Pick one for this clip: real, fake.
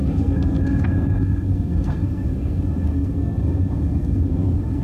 fake